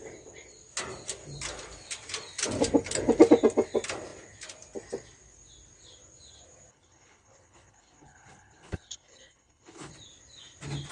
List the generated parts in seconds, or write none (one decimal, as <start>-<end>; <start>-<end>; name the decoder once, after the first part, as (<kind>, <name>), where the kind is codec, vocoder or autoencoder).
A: 6.7-9.9 (codec, HILCodec)

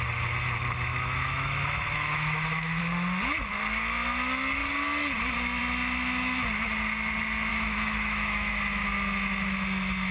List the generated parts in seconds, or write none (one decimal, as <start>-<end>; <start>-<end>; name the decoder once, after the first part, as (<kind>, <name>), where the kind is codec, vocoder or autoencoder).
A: 0.9-2.8 (autoencoder, DAC-VAE); 7.5-8.5

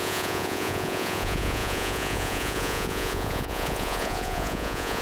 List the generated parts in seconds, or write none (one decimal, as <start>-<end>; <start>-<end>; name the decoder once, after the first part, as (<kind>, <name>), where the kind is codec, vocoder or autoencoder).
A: 0.0-5.0 (vocoder, Vocos)

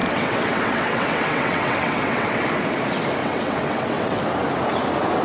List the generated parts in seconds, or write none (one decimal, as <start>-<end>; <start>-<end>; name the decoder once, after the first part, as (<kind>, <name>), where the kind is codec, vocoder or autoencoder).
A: 0.0-2.5 (vocoder, WaveNeXt); 3.2-4.2

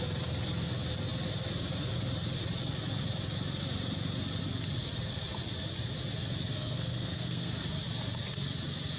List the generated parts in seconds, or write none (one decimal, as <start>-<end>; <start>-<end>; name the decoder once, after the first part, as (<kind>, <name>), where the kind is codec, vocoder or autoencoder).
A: 6.5-7.5 (codec, SNAC)

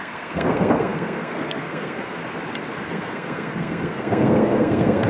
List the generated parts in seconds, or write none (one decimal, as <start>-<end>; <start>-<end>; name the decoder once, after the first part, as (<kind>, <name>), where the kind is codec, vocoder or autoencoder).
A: 0.0-2.2 (codec, SNAC); 2.9-5.1

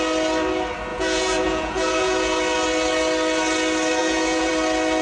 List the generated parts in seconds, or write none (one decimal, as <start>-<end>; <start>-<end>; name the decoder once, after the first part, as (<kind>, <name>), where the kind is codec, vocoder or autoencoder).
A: 0.9-2.4 (vocoder, Vocos); 4.0-4.5